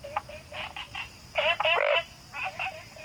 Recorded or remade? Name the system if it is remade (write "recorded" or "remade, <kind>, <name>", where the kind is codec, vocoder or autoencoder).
recorded